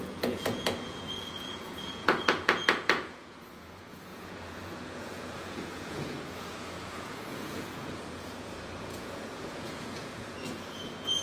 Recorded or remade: remade